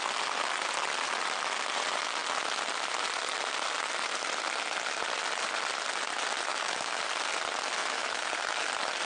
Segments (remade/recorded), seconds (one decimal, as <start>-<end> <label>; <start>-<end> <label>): 0.0-6.5 recorded; 6.5-7.0 remade; 7.0-7.8 recorded; 7.8-8.3 remade; 8.3-9.0 recorded

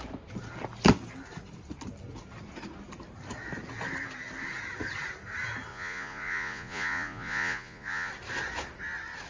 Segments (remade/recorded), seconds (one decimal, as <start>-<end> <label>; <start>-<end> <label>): 0.0-5.7 recorded; 5.7-8.1 remade; 8.1-9.3 recorded

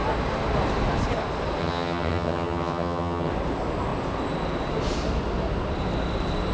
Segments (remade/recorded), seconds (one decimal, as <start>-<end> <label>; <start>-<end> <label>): 0.0-1.6 recorded; 1.6-3.3 remade; 3.3-6.5 recorded

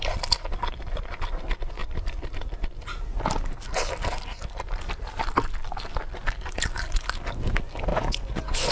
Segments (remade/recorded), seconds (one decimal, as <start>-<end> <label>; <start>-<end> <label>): 0.0-7.9 recorded; 7.9-8.7 remade

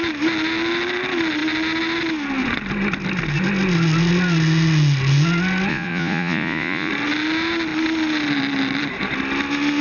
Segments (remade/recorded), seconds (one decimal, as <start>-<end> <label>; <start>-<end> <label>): 0.0-5.7 recorded; 5.7-6.9 remade; 6.9-9.8 recorded

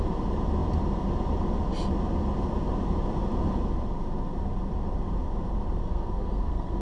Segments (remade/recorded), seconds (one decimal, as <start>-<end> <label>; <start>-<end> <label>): 0.0-5.8 recorded; 5.8-6.8 remade

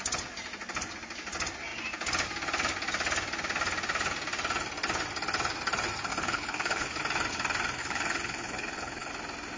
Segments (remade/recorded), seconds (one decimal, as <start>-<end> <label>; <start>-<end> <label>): 0.0-6.1 recorded; 6.1-7.0 remade; 7.0-7.8 recorded; 7.8-9.1 remade; 9.1-9.6 recorded

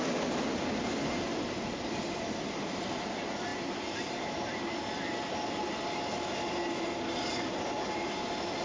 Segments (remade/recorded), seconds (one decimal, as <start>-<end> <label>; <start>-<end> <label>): 0.0-8.6 recorded